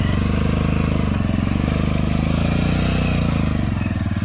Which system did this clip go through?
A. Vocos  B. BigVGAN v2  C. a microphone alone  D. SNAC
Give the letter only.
C